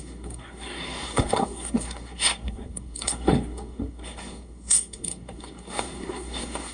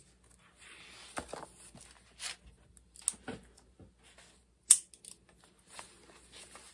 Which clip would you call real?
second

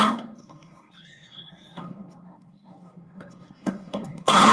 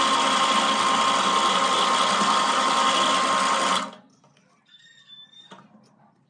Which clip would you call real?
second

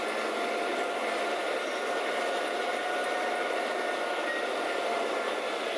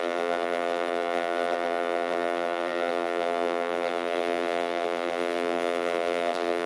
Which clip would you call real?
first